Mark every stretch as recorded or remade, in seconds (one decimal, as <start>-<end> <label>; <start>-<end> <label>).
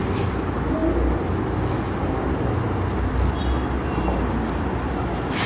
0.0-5.5 recorded